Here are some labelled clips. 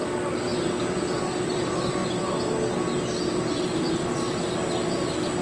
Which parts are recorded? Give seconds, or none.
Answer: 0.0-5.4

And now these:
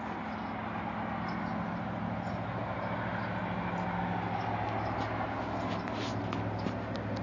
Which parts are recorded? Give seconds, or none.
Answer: 0.0-7.2

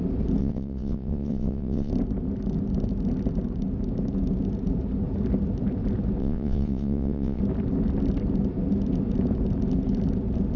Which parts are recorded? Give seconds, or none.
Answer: 0.0-0.4; 1.9-6.2; 7.4-10.6

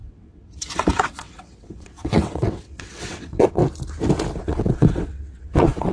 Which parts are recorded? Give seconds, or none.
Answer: 3.6-4.4